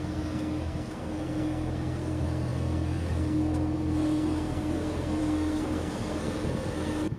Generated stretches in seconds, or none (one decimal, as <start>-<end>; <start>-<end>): 0.0-7.2